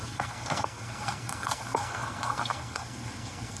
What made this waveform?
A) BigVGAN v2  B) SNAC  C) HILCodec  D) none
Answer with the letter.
B